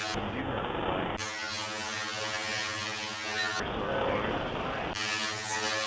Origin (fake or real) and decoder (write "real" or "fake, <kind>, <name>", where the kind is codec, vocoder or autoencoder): real